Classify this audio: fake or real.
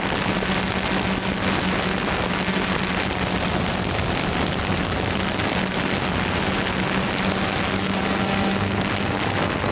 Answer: real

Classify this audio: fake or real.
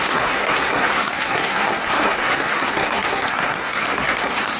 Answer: fake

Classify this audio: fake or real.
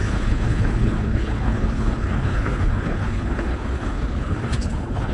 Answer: fake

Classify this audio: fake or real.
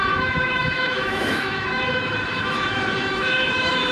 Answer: fake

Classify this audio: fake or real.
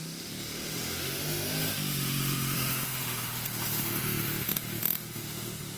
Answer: fake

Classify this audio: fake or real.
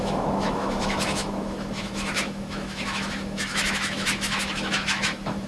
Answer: fake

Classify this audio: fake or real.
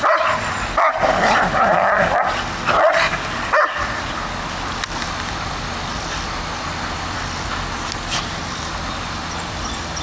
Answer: fake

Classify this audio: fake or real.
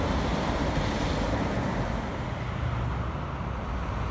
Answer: real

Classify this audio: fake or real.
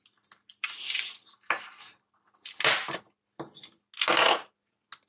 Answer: real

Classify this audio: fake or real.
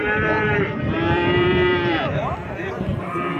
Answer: fake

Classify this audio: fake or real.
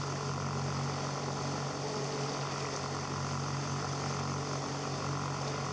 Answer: real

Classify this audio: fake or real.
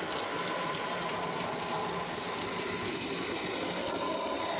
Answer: real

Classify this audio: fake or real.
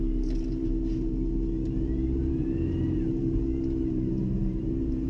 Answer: fake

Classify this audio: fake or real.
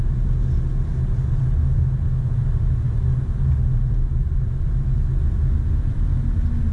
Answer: real